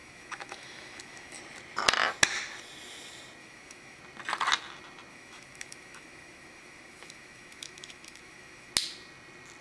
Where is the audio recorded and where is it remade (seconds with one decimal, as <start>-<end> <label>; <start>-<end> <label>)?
0.0-1.4 remade; 1.4-3.4 recorded; 3.4-4.0 remade; 4.0-5.1 recorded; 5.1-8.7 remade; 8.7-9.6 recorded